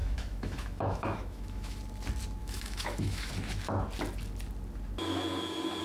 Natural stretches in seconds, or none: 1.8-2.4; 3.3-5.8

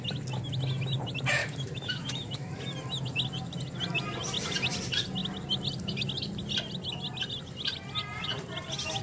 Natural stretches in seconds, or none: 0.0-1.4; 2.6-9.0